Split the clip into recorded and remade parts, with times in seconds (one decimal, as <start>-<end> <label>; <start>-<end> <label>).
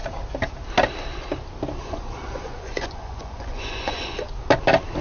0.0-1.8 recorded; 1.8-4.3 remade; 4.3-5.0 recorded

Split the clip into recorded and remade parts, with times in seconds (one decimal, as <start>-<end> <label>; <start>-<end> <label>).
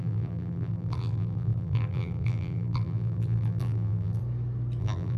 0.0-4.2 remade; 4.2-4.8 recorded; 4.8-5.2 remade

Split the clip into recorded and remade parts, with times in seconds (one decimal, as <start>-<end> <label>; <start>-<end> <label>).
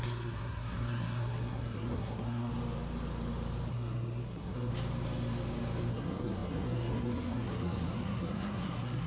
0.0-2.5 remade; 2.5-3.7 recorded; 3.7-4.7 remade; 4.7-5.9 recorded; 5.9-9.1 remade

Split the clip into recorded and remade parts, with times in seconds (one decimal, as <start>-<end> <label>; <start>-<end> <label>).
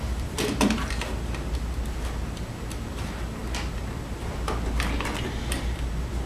0.0-6.3 recorded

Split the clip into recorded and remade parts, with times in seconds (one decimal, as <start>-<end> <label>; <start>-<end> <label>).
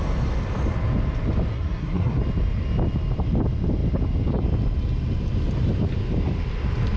0.0-1.5 recorded; 1.5-2.2 remade; 2.2-7.0 recorded